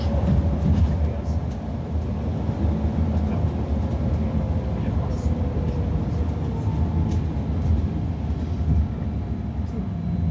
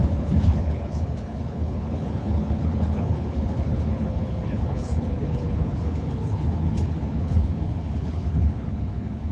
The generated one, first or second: second